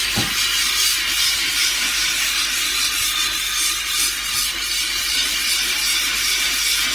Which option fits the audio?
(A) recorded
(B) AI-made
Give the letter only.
A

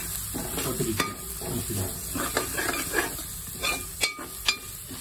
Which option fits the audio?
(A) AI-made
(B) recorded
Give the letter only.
B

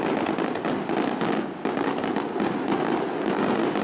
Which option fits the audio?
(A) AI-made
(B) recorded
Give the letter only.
B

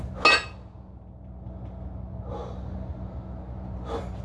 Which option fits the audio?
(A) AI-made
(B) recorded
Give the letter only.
B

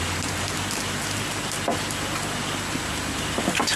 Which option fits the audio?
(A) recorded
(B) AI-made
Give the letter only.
A